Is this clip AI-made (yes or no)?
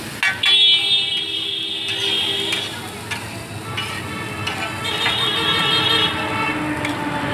no